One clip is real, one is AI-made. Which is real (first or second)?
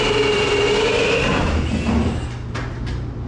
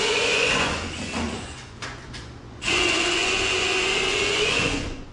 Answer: first